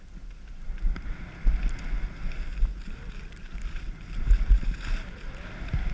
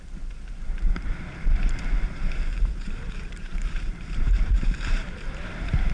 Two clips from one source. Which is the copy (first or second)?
second